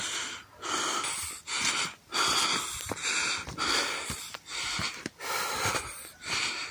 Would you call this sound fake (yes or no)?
no